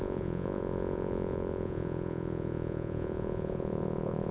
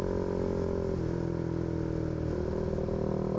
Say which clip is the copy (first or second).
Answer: first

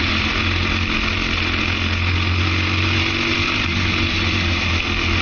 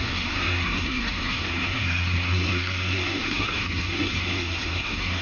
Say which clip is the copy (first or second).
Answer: second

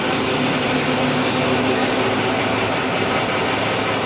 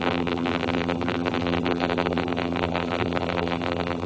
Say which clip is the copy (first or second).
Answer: second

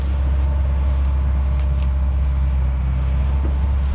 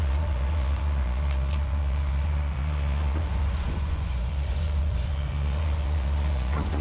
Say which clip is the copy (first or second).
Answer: second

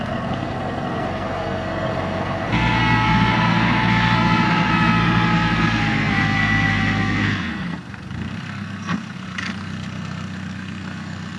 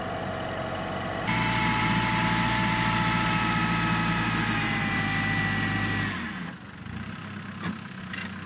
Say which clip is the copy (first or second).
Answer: first